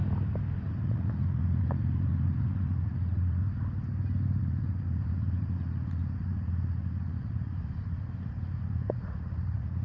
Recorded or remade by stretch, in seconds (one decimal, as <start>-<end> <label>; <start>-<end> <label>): 0.0-0.8 recorded; 0.8-3.4 remade; 3.4-4.4 recorded; 4.4-7.6 remade; 7.6-8.6 recorded; 8.6-9.8 remade